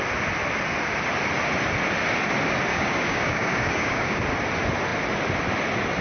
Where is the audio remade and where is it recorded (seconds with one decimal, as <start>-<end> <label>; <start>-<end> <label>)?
0.0-2.7 recorded; 2.7-4.2 remade; 4.2-6.0 recorded